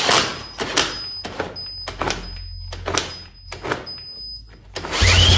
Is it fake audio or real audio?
real